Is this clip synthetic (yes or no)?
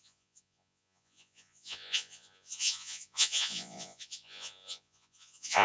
yes